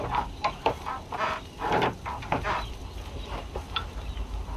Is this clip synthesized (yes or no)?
no